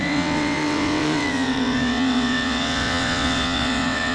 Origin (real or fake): fake